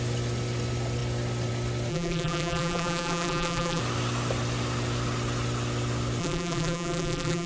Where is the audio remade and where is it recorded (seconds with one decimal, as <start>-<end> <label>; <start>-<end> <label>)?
0.0-1.9 recorded; 1.9-3.8 remade; 3.8-6.2 recorded; 6.2-7.5 remade